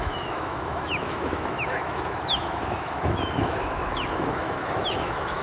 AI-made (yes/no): yes